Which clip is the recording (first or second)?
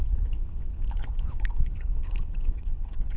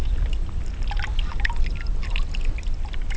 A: second